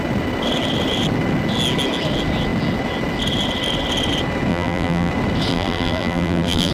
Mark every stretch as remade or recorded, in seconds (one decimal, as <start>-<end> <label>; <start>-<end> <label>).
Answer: 0.0-4.5 recorded; 4.5-5.1 remade; 5.1-5.5 recorded; 5.5-6.7 remade